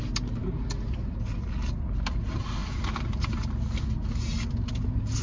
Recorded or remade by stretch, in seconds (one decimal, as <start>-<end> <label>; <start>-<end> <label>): 0.0-5.2 recorded